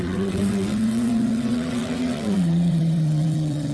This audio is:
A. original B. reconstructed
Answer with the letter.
B